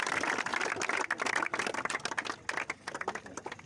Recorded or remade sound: recorded